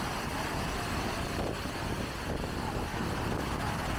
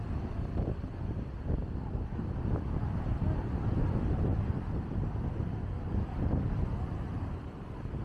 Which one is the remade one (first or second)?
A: second